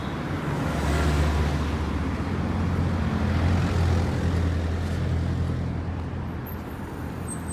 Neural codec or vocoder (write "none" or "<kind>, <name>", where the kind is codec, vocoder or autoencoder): none